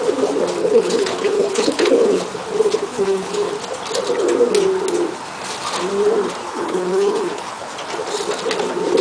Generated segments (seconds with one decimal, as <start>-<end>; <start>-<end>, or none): 0.6-2.2; 2.9-3.5; 6.4-7.7